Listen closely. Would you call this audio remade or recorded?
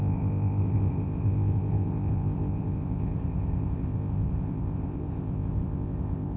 remade